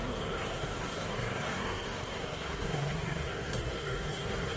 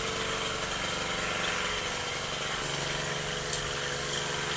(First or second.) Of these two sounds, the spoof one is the first